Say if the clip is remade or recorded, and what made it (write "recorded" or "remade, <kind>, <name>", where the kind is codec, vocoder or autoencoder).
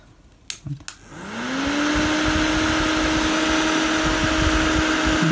recorded